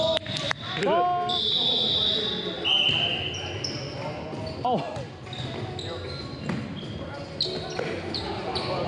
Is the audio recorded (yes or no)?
yes